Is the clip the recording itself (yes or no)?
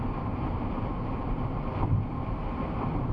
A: no